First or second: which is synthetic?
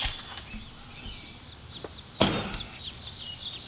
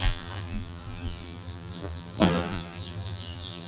second